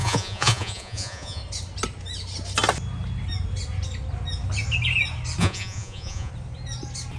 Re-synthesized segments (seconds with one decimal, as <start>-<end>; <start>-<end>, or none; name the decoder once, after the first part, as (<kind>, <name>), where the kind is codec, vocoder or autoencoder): 0.0-1.4 (vocoder, Vocos); 5.4-6.3